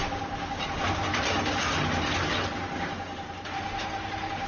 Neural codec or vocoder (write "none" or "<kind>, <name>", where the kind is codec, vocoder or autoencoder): none